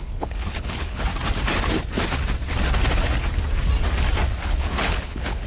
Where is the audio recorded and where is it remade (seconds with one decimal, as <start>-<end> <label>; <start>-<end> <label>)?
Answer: 0.0-1.1 remade; 1.1-4.4 recorded; 4.4-5.5 remade